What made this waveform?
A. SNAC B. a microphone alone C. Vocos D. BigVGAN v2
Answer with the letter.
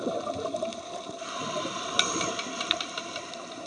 D